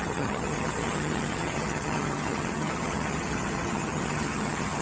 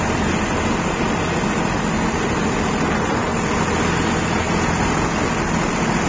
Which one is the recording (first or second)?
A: second